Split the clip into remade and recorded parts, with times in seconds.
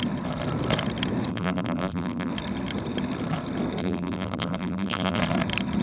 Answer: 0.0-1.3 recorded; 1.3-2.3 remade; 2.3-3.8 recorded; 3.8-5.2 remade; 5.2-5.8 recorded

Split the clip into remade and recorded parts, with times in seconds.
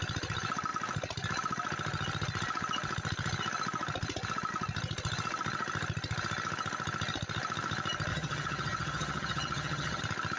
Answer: 0.0-8.1 recorded; 8.1-10.0 remade; 10.0-10.4 recorded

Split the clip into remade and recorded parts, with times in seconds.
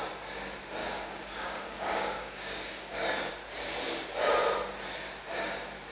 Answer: 0.0-0.8 recorded; 0.8-3.3 remade; 3.3-5.9 recorded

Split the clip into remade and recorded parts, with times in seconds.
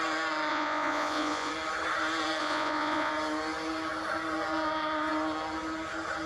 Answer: 0.0-0.5 recorded; 0.5-1.5 remade; 1.5-2.4 recorded; 2.4-3.1 remade; 3.1-6.3 recorded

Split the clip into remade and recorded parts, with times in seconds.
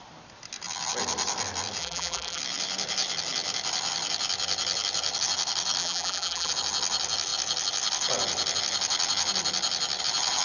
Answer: 0.0-1.8 recorded; 1.8-2.4 remade; 2.4-5.8 recorded; 5.8-6.5 remade; 6.5-10.4 recorded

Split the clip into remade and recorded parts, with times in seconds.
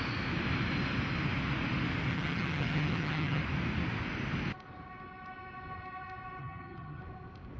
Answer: 0.0-2.1 recorded; 2.1-3.4 remade; 3.4-6.4 recorded; 6.4-7.0 remade; 7.0-7.6 recorded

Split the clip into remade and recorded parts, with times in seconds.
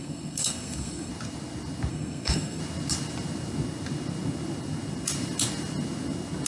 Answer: 0.0-1.1 remade; 1.1-1.9 recorded; 1.9-2.6 remade; 2.6-6.5 recorded